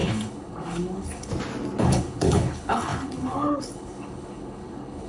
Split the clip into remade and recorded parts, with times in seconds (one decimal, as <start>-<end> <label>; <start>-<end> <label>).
0.0-1.3 remade; 1.3-1.8 recorded; 1.8-5.1 remade